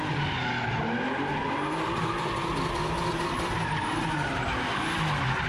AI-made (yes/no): no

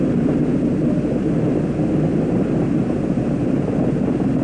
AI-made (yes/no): no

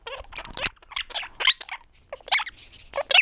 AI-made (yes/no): no